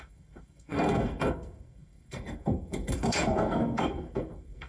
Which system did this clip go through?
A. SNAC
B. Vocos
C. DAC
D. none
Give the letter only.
A